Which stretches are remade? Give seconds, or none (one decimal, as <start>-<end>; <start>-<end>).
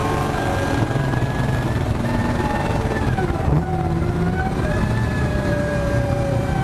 0.7-6.6